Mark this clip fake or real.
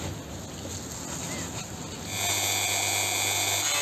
real